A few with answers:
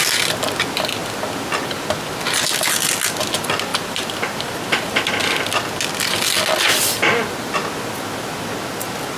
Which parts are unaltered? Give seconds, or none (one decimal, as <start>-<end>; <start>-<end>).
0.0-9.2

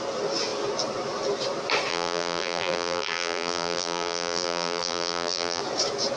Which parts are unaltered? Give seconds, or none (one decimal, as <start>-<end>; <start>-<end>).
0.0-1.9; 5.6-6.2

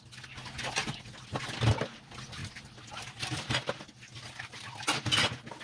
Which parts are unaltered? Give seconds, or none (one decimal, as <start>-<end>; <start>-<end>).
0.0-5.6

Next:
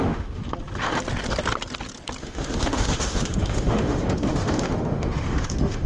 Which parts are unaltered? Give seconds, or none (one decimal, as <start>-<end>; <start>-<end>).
0.4-2.2

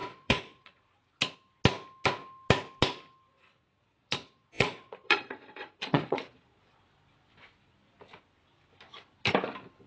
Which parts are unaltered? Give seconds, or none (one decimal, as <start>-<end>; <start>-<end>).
0.8-3.3; 6.8-9.9

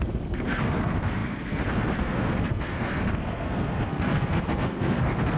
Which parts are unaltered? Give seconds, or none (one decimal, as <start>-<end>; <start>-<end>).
none